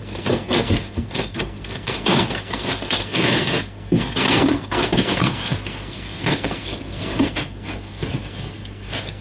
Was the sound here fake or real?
fake